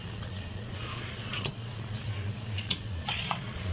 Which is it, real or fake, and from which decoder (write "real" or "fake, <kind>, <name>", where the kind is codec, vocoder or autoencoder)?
fake, vocoder, Vocos